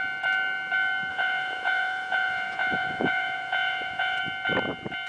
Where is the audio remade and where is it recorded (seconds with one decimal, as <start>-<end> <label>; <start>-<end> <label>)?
0.0-1.1 recorded; 1.1-4.2 remade; 4.2-5.1 recorded

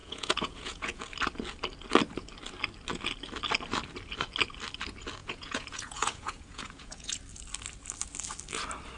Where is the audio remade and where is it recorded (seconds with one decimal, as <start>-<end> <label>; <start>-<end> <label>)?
0.0-1.0 remade; 1.0-5.2 recorded; 5.2-7.2 remade; 7.2-9.0 recorded

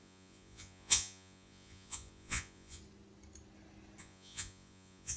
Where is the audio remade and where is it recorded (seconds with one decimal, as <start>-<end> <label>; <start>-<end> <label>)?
0.0-2.8 remade; 2.8-4.0 recorded; 4.0-5.2 remade

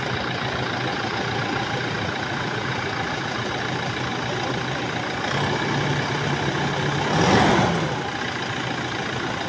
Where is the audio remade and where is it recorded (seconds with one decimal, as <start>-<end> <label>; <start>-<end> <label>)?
0.0-0.9 recorded; 0.9-3.5 remade; 3.5-9.5 recorded

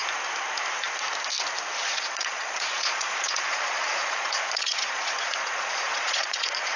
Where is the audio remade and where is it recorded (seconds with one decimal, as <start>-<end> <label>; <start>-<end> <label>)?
0.0-1.8 recorded; 1.8-6.8 remade

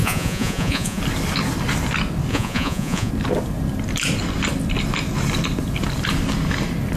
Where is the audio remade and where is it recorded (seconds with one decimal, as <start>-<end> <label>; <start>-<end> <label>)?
0.0-1.0 remade; 1.0-2.3 recorded; 2.3-3.1 remade; 3.1-7.0 recorded